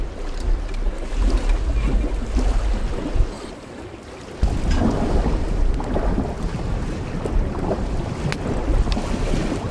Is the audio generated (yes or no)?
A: no